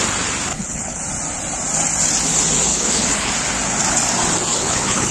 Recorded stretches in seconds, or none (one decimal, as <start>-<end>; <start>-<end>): 0.0-0.5; 1.0-2.7; 3.3-4.5

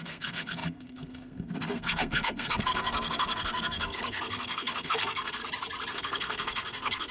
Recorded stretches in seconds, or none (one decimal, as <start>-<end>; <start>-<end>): 5.4-5.9

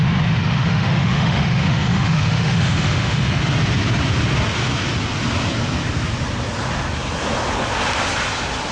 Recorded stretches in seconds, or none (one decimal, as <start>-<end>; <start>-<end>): 0.0-0.4; 3.4-8.7

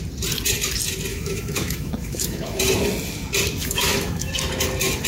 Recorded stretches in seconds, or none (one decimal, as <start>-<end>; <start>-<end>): 0.0-1.1; 2.6-3.6; 4.3-5.1

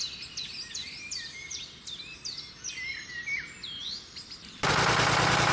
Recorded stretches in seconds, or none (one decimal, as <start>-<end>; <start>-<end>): 0.0-5.5

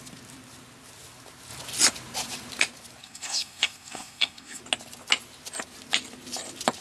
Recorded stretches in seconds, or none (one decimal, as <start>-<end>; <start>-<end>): 0.0-3.0; 4.6-6.8